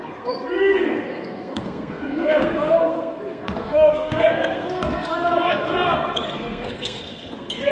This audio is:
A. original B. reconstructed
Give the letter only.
B